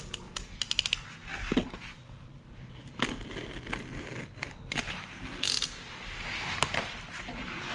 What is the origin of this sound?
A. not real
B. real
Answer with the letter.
B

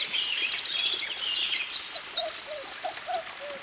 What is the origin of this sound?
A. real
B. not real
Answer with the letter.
A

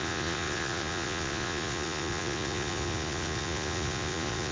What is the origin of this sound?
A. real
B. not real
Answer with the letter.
B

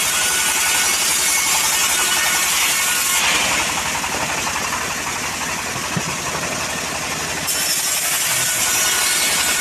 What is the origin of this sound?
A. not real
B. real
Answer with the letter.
B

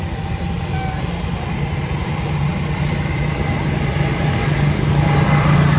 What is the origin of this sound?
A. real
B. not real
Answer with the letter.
A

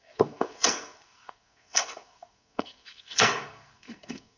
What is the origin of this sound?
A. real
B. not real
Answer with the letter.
B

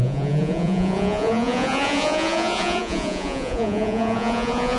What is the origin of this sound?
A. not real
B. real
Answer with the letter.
A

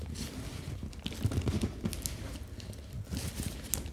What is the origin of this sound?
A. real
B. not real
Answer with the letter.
A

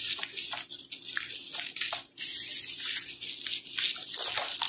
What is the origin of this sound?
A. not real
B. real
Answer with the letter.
B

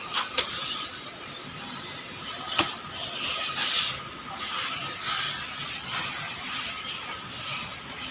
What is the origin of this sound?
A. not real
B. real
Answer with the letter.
B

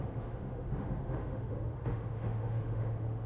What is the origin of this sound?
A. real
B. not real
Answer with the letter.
B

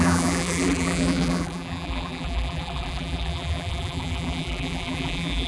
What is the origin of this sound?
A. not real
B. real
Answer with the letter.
A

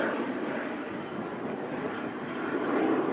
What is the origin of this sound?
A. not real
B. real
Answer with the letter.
B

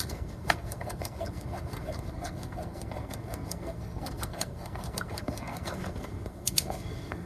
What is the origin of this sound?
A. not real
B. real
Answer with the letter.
A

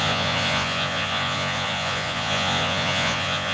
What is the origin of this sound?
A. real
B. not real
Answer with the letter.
B